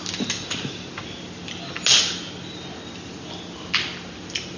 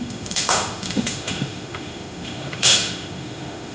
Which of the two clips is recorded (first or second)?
first